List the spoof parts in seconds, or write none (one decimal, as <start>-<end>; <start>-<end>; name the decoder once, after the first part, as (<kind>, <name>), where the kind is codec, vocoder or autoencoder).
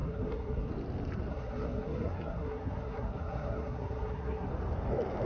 0.0-0.7 (codec, SNAC); 1.3-4.5